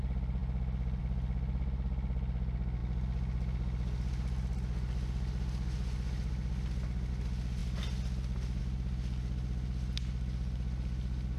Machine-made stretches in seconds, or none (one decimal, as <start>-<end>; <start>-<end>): none